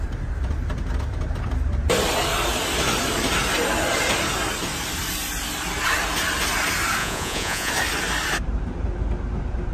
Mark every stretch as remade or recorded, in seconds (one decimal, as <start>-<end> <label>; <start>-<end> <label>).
0.0-7.0 recorded; 7.0-7.7 remade; 7.7-9.7 recorded